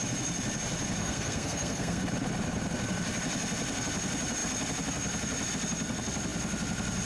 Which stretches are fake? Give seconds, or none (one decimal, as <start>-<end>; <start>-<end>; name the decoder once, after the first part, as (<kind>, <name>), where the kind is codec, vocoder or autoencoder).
1.0-2.0 (codec, SNAC)